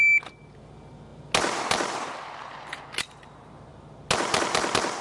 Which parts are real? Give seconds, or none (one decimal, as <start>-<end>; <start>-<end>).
0.0-5.0